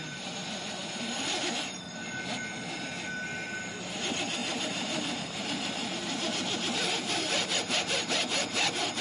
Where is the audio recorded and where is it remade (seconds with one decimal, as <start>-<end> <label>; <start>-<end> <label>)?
0.0-0.8 recorded; 0.8-1.8 remade; 1.8-4.4 recorded; 4.4-8.6 remade; 8.6-9.0 recorded